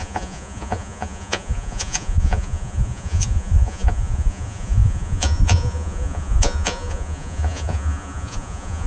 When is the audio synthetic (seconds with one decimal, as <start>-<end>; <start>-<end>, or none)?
0.0-8.9